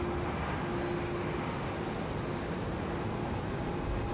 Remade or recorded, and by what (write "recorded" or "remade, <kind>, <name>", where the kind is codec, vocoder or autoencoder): recorded